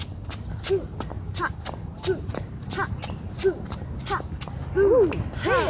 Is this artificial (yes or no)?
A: no